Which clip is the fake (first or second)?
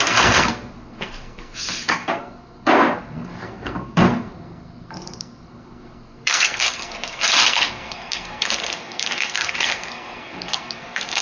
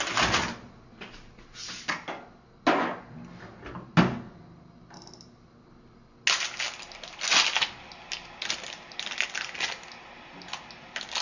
first